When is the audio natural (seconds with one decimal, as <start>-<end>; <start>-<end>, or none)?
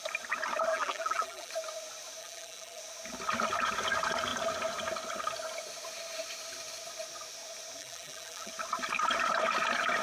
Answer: 0.0-0.7; 1.5-2.2; 2.8-7.8; 8.5-10.0